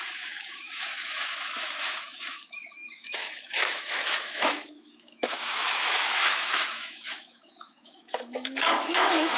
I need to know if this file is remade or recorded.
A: remade